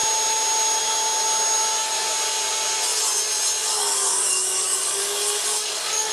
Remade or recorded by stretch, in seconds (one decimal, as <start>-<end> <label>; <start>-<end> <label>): 0.0-3.6 recorded; 3.6-6.1 remade